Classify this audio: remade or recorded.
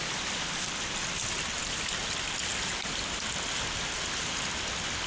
recorded